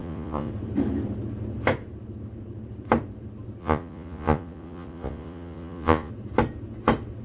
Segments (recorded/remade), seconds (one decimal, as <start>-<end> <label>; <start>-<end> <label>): 0.0-0.5 remade; 0.5-3.6 recorded; 3.6-6.1 remade; 6.1-7.2 recorded